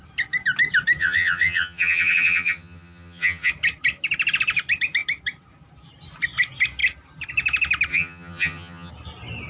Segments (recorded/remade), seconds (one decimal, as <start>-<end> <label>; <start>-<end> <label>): 0.0-1.0 recorded; 1.0-3.5 remade; 3.5-7.9 recorded; 7.9-8.9 remade; 8.9-9.5 recorded